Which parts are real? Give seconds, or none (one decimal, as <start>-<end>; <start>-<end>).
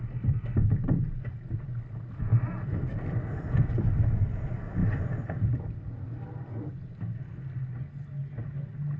0.0-9.0